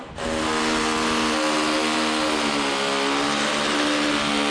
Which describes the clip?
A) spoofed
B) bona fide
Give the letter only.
B